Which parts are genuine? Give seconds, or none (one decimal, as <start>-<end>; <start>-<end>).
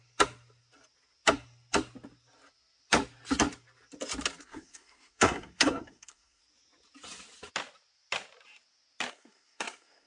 0.0-4.4; 6.4-9.1